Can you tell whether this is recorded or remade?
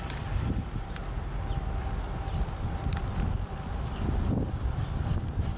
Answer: recorded